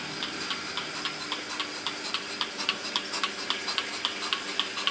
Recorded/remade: recorded